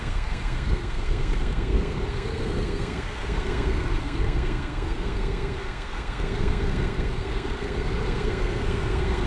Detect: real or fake fake